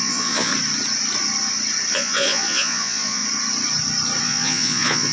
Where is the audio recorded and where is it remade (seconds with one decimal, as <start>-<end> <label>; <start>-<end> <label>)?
0.0-0.5 remade; 0.5-1.9 recorded; 1.9-3.2 remade; 3.2-4.2 recorded; 4.2-5.1 remade